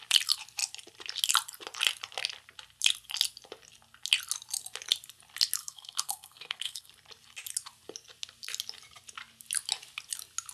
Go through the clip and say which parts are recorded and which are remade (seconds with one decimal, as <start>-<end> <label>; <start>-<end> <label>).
0.0-5.6 recorded; 5.6-6.9 remade; 6.9-10.5 recorded